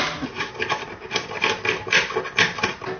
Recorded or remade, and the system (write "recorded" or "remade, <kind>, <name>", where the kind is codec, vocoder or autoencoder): recorded